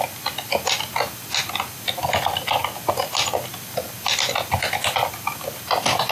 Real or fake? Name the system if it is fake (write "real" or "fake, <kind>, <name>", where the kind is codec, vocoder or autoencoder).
real